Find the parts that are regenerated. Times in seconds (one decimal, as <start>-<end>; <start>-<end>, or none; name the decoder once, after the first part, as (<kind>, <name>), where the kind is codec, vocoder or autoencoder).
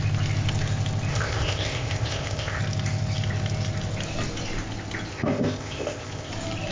1.1-2.6 (codec, ZipCodec); 5.1-6.3